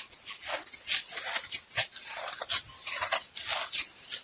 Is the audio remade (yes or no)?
no